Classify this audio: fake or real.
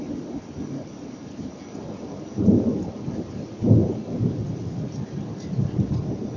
real